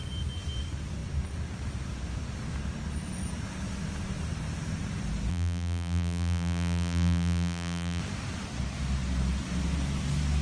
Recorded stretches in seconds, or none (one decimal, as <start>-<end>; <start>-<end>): 0.0-5.3; 8.0-10.4